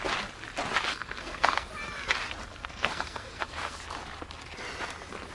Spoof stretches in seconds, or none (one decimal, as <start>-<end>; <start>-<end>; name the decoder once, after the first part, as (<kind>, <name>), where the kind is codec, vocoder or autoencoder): 0.9-1.7 (codec, SNAC); 2.5-3.8